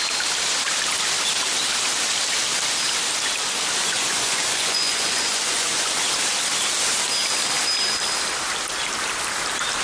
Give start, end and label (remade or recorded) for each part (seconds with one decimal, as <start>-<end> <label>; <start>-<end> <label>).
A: 0.0-3.8 recorded; 3.8-6.1 remade; 6.1-9.8 recorded